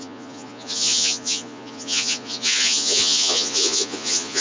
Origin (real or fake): fake